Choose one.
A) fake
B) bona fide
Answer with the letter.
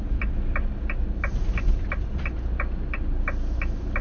B